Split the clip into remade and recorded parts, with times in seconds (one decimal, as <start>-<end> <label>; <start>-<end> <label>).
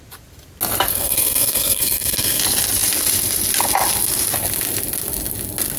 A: 0.0-0.9 recorded; 0.9-2.4 remade; 2.4-5.8 recorded